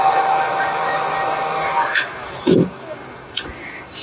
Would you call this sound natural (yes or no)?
no